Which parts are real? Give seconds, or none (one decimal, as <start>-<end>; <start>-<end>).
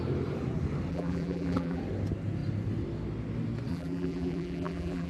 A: 0.0-0.9; 1.8-3.7